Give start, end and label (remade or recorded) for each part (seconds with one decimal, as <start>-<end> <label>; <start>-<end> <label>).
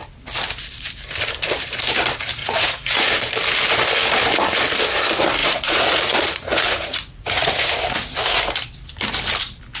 0.0-2.4 recorded; 2.4-3.1 remade; 3.1-5.4 recorded; 5.4-7.7 remade; 7.7-9.8 recorded